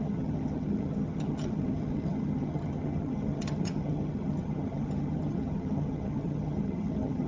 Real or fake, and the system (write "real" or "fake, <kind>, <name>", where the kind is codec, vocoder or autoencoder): fake, vocoder, HiFi-GAN